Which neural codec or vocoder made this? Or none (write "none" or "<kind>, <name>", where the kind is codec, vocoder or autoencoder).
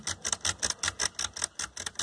none